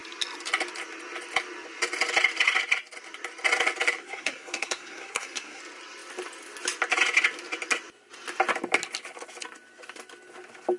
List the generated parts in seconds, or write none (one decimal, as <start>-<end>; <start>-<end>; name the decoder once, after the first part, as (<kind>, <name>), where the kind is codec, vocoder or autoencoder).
4.0-5.6 (codec, SNAC)